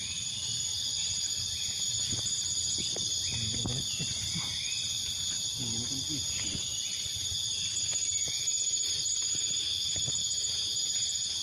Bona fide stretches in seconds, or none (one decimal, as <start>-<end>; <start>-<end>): 0.0-10.2